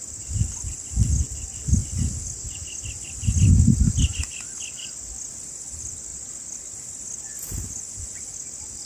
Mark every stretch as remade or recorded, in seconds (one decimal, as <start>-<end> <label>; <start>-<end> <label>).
0.0-8.9 recorded